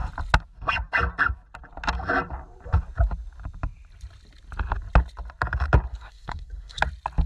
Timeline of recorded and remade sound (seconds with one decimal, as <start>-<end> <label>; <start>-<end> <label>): 0.0-5.9 recorded; 5.9-6.8 remade; 6.8-7.3 recorded